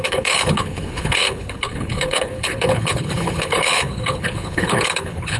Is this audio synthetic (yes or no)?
yes